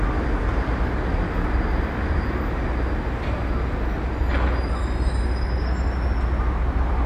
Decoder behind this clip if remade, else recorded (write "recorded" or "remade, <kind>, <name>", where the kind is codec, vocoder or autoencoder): recorded